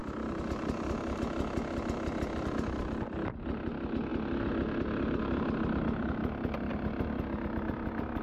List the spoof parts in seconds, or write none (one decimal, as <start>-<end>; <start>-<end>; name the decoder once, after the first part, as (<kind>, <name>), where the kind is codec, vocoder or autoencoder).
none